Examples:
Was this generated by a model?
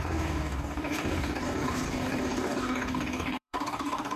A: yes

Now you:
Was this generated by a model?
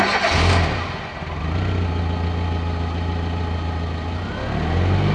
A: no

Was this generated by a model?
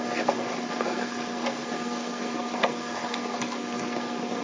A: yes